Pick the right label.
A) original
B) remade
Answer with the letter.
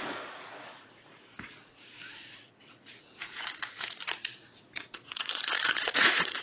B